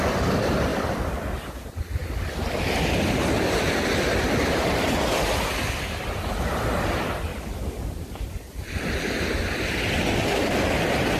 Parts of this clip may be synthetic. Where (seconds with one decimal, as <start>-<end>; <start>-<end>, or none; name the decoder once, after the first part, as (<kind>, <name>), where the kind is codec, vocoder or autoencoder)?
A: 0.7-1.3 (vocoder, BigVGAN v2); 7.3-8.2